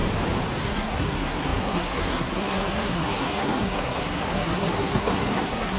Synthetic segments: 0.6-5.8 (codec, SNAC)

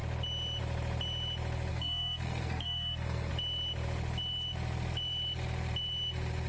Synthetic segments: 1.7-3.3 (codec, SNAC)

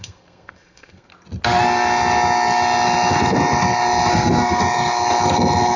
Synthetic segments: 0.0-1.1 (codec, SNAC); 4.1-4.6

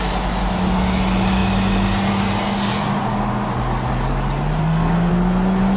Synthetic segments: 4.6-5.1 (codec, SNAC)

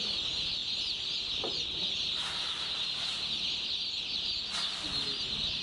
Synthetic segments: none

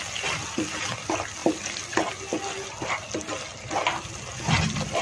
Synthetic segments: none

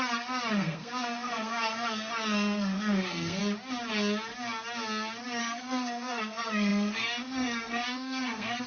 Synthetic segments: 0.0-3.4 (codec, SNAC); 5.4-8.7